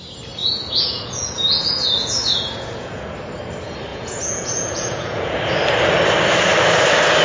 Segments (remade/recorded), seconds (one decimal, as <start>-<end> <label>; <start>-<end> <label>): 0.0-0.4 recorded; 0.4-3.1 remade; 3.1-3.9 recorded; 3.9-5.4 remade; 5.4-7.2 recorded